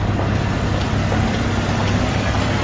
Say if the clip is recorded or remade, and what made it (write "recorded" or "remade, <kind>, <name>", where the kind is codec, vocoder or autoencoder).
recorded